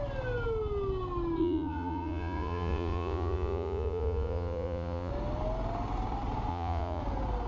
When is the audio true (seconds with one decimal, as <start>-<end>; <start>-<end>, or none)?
0.0-1.4; 5.1-6.5; 7.0-7.5